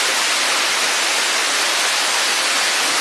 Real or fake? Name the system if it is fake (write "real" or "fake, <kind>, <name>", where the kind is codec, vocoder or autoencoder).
real